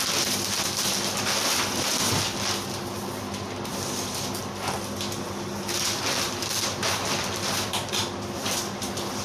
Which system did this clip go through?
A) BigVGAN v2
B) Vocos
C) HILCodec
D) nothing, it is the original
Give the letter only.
A